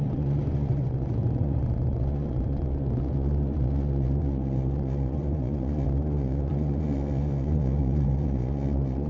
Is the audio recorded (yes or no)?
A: no